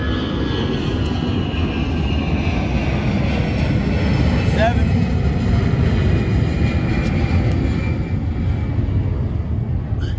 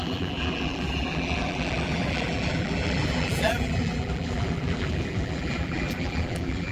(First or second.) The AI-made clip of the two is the second